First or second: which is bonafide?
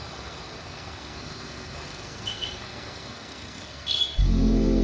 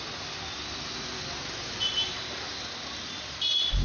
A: second